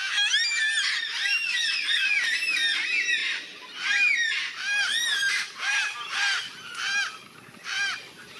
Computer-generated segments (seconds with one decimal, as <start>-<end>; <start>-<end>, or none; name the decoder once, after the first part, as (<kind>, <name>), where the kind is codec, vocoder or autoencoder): none